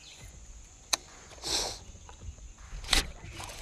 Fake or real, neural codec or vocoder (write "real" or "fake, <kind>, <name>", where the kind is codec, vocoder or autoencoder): fake, vocoder, Vocos